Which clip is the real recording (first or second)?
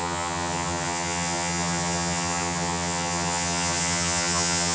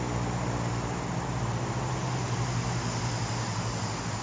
second